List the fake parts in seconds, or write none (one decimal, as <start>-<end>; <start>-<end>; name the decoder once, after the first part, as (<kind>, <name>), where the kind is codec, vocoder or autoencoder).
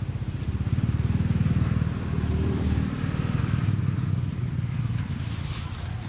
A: 0.4-3.4 (vocoder, BigVGAN v2)